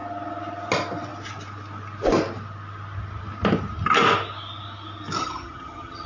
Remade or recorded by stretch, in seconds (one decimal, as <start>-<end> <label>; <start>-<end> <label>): 0.0-5.2 recorded; 5.2-6.1 remade